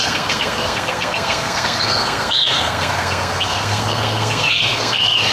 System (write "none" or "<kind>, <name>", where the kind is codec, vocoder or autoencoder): codec, SNAC